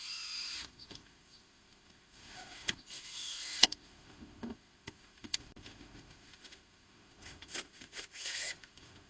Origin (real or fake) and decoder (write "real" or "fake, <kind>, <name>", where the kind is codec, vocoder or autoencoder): fake, autoencoder, DAC-VAE